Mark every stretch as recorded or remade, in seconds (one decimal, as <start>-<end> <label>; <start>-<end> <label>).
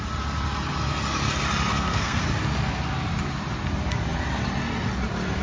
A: 0.0-1.7 recorded; 1.7-2.2 remade; 2.2-5.4 recorded